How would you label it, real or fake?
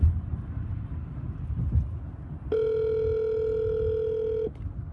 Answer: real